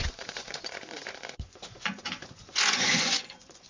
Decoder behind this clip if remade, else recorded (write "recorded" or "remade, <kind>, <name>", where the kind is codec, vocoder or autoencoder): remade, vocoder, Vocos